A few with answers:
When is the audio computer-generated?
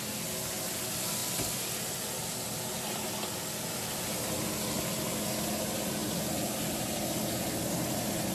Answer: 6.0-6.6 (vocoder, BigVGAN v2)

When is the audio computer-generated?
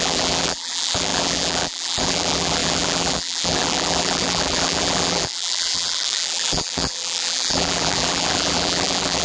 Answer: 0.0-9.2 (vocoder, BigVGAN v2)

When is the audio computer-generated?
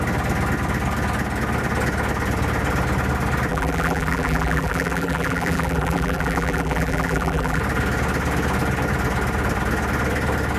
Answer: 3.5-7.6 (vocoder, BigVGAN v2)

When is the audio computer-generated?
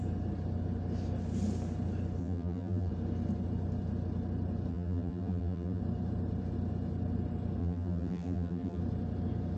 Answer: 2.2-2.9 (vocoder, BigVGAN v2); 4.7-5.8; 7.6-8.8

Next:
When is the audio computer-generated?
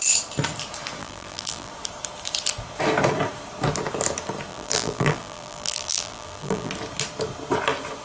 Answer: 1.0-1.7 (vocoder, BigVGAN v2); 4.5-6.7